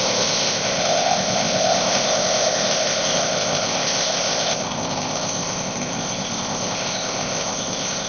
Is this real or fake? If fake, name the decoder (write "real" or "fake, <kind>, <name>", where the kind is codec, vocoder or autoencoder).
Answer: fake, codec, ZipCodec